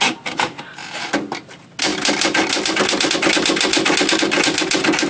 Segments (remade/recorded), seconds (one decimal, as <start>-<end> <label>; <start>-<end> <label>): 0.0-5.1 recorded